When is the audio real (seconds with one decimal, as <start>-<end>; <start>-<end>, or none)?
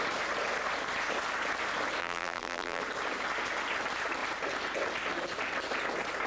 0.0-2.0; 2.8-6.3